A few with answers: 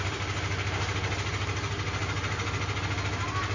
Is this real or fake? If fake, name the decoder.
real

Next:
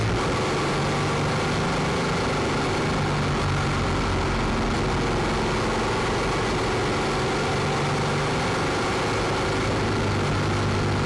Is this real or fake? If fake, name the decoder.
real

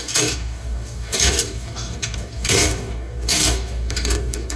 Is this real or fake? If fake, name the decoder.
fake, codec, DAC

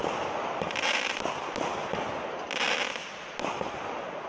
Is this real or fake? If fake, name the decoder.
real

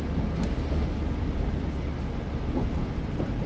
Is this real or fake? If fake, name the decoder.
real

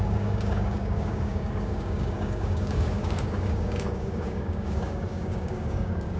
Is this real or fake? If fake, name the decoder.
fake, codec, DAC